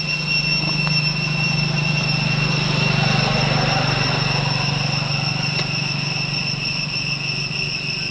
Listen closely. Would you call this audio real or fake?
real